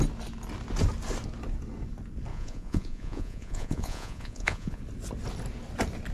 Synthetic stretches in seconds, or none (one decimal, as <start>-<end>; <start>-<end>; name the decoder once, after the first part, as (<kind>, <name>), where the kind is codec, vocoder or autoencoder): 2.3-4.8 (vocoder, Vocos)